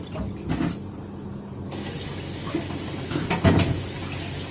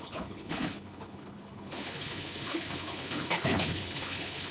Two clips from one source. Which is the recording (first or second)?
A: first